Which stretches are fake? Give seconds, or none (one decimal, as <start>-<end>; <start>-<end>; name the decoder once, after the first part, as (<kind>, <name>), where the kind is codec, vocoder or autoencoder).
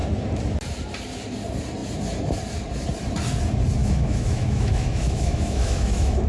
3.8-6.3 (autoencoder, DAC-VAE)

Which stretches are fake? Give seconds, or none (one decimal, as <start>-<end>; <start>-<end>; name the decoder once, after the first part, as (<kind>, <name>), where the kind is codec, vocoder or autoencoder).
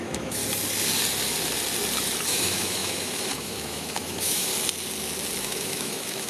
0.0-0.4 (autoencoder, DAC-VAE); 2.3-4.5; 5.4-6.3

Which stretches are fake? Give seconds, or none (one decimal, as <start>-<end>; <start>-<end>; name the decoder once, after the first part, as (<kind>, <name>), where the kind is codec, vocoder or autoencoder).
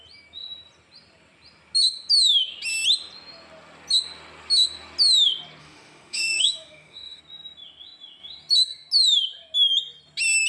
5.6-7.2 (autoencoder, DAC-VAE)